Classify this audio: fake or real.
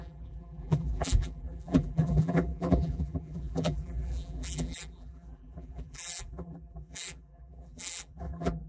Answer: fake